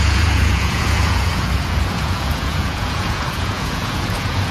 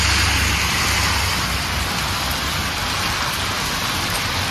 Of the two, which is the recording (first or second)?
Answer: second